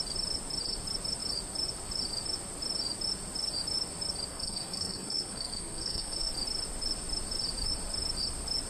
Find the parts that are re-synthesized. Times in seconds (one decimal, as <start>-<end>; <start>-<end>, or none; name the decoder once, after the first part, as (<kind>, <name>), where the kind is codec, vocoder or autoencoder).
4.3-6.3 (codec, SNAC)